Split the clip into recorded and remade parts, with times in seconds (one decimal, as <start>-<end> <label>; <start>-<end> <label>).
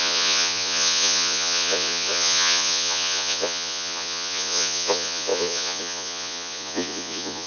0.0-7.5 remade